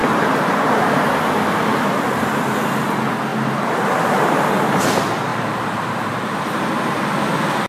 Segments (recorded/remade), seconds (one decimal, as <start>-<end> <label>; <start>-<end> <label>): 0.0-1.1 remade; 1.1-3.3 recorded; 3.3-4.8 remade; 4.8-5.3 recorded; 5.3-7.0 remade; 7.0-7.7 recorded